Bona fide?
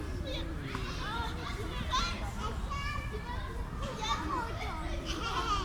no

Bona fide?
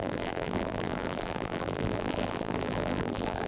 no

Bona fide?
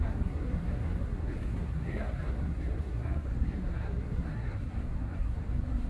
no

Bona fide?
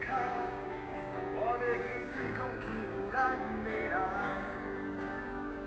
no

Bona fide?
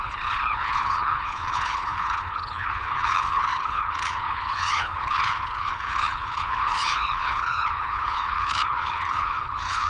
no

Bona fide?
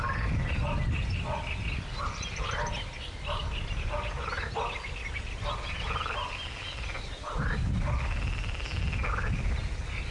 yes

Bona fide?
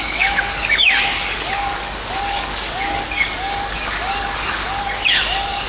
no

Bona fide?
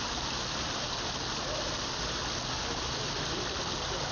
yes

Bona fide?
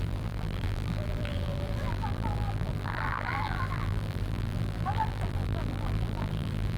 no